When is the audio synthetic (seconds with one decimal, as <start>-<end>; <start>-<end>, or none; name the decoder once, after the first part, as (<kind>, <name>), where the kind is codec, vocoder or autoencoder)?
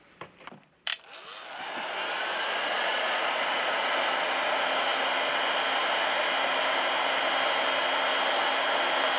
2.3-3.9 (vocoder, Vocos)